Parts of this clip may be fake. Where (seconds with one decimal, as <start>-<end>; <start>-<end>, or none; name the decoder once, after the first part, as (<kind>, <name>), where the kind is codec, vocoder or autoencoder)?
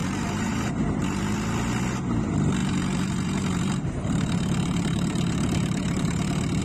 0.0-0.7 (vocoder, BigVGAN v2); 2.6-6.6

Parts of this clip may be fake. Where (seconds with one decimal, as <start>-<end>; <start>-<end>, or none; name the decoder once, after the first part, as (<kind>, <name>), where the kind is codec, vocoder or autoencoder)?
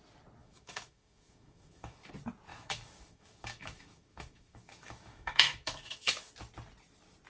0.4-2.1 (autoencoder, DAC-VAE); 2.5-6.3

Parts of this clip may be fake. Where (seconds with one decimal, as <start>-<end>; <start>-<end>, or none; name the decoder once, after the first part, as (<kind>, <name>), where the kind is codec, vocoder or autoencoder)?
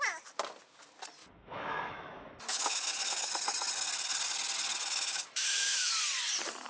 1.2-3.3 (autoencoder, DAC-VAE); 4.8-5.9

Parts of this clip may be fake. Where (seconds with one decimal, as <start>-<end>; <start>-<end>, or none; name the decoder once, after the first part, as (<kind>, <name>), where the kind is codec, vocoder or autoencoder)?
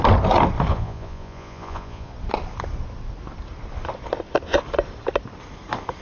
0.7-2.1 (vocoder, Vocos)